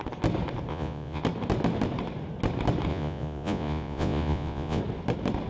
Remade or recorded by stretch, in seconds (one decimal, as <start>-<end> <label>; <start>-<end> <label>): 0.0-0.7 recorded; 0.7-1.2 remade; 1.2-2.9 recorded; 2.9-4.8 remade; 4.8-5.5 recorded